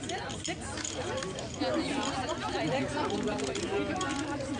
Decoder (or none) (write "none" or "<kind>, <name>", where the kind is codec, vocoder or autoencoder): none